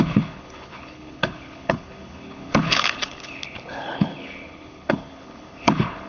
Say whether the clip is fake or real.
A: fake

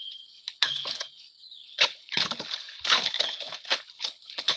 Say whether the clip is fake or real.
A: fake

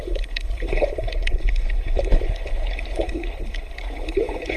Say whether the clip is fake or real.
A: fake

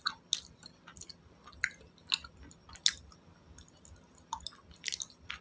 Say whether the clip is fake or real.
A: real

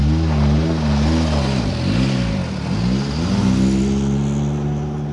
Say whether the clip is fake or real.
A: real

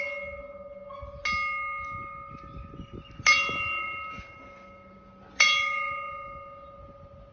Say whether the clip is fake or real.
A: real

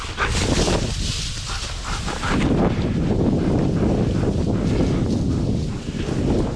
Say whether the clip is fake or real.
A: real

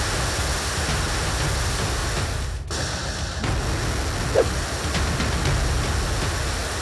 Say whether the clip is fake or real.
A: real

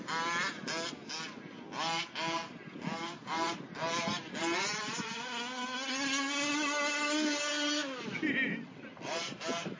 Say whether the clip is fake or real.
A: real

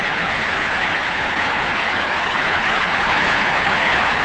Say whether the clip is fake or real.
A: fake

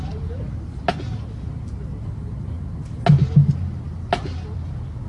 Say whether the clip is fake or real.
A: real